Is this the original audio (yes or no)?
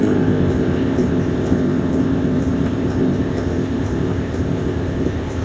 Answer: no